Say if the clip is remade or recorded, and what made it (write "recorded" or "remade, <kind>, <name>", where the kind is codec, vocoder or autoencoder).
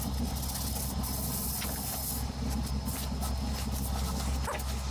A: recorded